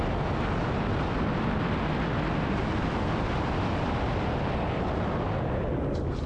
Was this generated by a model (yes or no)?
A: no